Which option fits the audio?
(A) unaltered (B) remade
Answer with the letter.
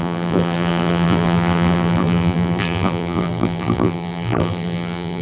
B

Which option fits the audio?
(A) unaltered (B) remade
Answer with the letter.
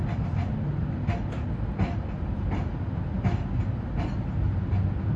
A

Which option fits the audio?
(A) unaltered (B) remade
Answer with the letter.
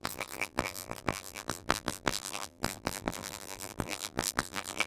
B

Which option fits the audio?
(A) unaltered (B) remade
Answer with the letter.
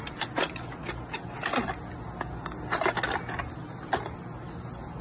A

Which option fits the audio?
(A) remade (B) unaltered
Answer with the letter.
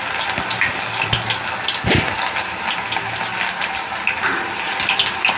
B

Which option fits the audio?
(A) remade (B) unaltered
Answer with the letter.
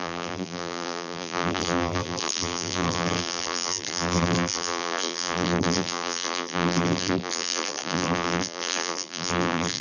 A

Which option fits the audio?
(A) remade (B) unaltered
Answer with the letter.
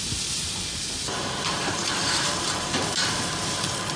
A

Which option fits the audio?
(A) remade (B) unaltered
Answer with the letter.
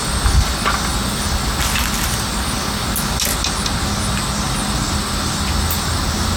B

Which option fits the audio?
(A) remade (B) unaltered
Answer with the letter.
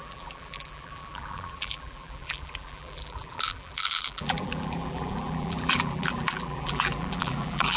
A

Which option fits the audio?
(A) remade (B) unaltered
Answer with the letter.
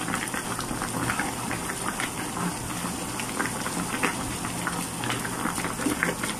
B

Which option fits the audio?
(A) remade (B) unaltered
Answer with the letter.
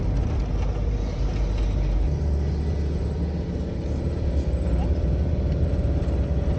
B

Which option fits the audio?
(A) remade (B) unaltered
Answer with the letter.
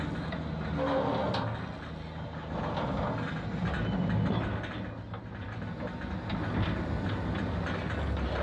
B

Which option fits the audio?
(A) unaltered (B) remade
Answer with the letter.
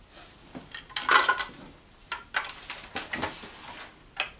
A